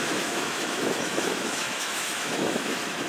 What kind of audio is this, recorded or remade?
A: remade